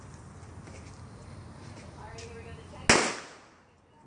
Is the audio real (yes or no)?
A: yes